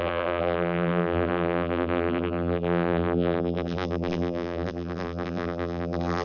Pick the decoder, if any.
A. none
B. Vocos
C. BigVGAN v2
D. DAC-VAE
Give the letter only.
C